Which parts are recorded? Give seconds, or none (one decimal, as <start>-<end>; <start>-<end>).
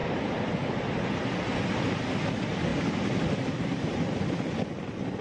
0.0-5.2